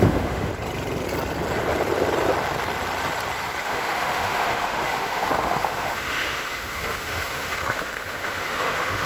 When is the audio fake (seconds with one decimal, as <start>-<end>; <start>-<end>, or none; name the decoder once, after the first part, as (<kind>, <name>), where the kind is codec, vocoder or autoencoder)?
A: 0.0-0.5 (autoencoder, DAC-VAE); 3.6-9.1